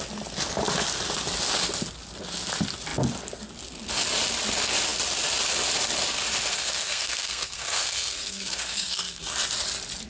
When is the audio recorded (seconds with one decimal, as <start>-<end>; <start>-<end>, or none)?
0.0-6.5; 9.2-10.1